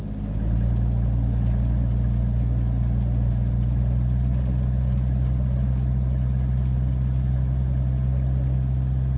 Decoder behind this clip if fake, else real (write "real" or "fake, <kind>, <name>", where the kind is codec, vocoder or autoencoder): real